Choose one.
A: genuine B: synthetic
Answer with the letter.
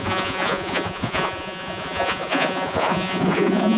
B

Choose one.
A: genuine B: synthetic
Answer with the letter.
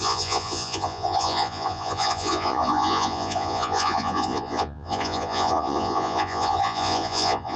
B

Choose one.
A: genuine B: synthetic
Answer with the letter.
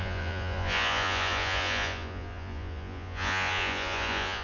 B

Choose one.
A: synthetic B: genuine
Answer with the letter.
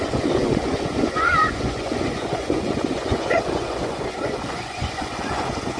A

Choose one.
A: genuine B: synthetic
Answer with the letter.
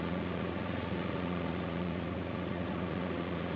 B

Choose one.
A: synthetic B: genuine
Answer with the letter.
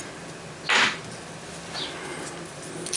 B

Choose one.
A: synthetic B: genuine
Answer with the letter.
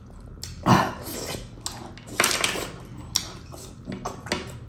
B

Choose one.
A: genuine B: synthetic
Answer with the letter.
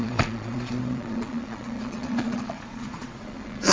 B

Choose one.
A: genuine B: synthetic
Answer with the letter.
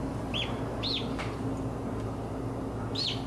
A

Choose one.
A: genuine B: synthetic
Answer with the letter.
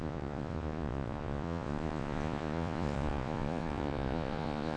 B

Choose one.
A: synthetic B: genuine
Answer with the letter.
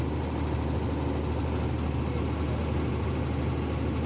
B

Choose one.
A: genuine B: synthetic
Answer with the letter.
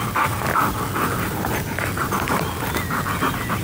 A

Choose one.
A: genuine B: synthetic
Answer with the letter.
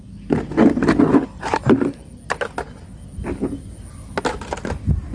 A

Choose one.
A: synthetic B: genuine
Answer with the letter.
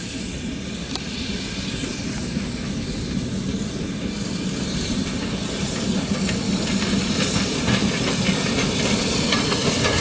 B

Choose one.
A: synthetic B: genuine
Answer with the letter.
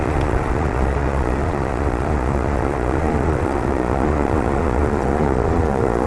A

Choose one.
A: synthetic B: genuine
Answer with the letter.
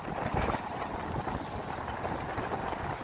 B